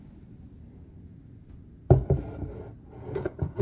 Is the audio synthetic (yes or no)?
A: no